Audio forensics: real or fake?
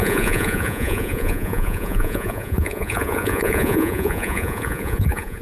fake